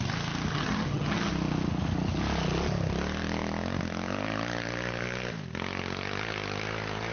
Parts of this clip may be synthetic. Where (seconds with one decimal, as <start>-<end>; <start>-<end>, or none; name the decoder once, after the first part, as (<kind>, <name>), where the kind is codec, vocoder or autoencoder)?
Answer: 0.5-1.3 (vocoder, HiFi-GAN)